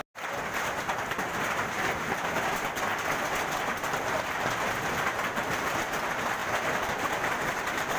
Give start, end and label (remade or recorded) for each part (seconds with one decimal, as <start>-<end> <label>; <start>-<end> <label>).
0.0-6.4 recorded; 6.4-8.0 remade